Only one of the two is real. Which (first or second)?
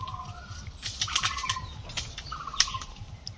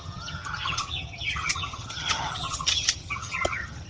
first